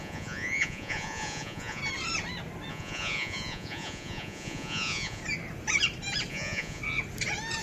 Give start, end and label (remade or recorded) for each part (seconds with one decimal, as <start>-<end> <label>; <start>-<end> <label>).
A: 0.0-1.8 remade; 1.8-2.7 recorded; 2.7-5.2 remade; 5.2-6.3 recorded; 6.3-6.8 remade; 6.8-7.6 recorded